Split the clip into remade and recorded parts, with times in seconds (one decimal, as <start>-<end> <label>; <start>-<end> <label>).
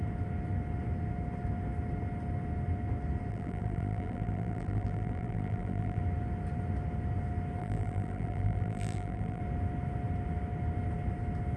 0.0-3.3 recorded; 3.3-6.0 remade; 6.0-7.6 recorded; 7.6-9.4 remade; 9.4-11.6 recorded